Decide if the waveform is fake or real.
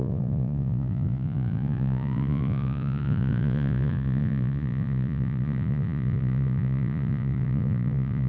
fake